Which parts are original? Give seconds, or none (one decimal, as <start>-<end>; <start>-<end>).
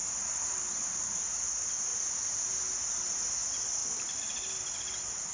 0.9-1.9; 3.3-3.8; 4.8-5.3